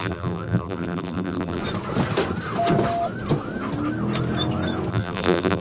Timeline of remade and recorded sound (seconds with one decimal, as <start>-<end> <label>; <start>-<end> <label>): 0.0-1.6 remade; 1.6-4.9 recorded; 4.9-5.6 remade